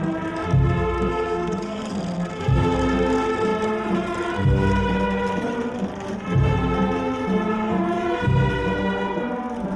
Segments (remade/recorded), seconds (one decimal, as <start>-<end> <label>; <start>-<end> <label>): 0.0-1.1 recorded; 1.1-1.9 remade; 1.9-9.8 recorded